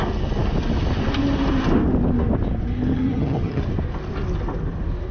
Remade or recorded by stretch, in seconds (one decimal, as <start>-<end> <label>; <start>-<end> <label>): 0.0-2.9 recorded; 2.9-3.6 remade; 3.6-5.1 recorded